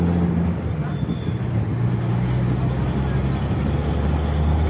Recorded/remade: recorded